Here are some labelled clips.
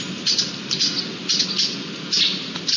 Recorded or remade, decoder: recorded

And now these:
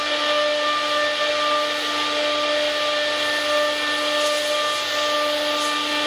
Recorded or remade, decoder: recorded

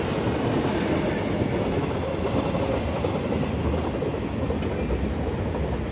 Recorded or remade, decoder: recorded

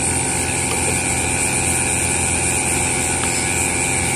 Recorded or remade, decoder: recorded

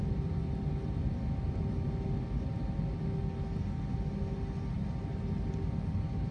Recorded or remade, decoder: recorded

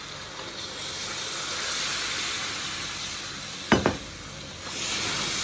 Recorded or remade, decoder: recorded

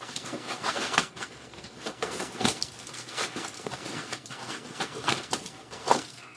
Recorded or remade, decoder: remade, codec, SNAC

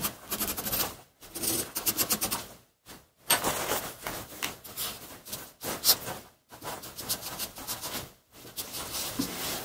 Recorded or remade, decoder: recorded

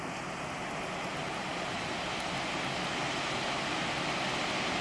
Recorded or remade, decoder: recorded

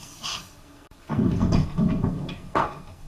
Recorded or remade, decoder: remade, codec, SNAC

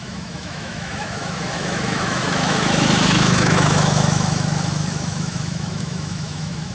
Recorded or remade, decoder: remade, autoencoder, DAC-VAE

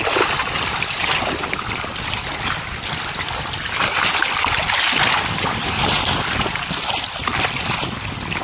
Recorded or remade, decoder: recorded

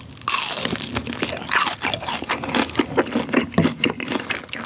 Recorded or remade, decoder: recorded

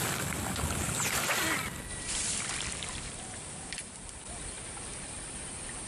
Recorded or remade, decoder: remade, vocoder, BigVGAN v2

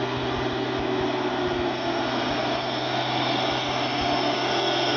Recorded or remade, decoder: recorded